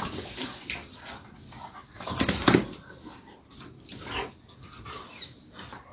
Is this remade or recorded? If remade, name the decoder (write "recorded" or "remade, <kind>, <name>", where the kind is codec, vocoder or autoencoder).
recorded